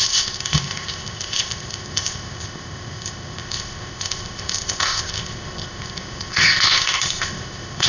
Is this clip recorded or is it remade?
remade